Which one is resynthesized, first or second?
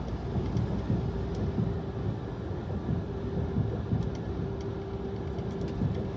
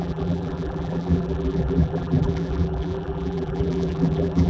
second